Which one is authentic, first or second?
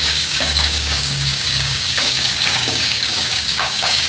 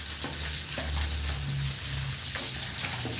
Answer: second